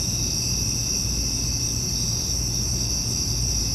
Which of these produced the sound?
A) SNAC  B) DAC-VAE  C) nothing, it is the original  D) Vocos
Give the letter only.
C